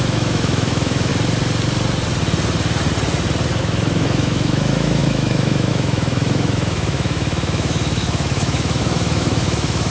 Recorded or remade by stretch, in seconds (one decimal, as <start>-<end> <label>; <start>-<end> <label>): 0.0-1.1 remade; 1.1-3.6 recorded; 3.6-9.9 remade